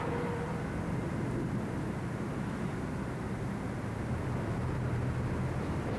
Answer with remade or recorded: recorded